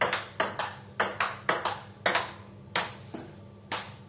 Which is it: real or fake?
real